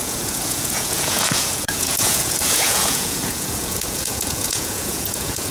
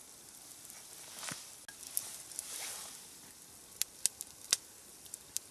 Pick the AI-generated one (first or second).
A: first